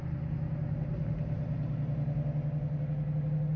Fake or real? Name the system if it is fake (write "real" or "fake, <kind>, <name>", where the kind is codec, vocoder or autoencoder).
real